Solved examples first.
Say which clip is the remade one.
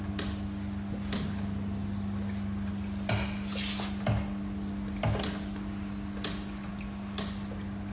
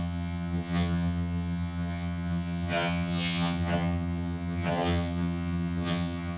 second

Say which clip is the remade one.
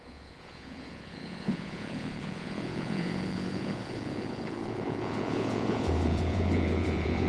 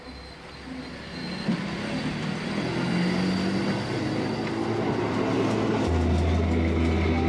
first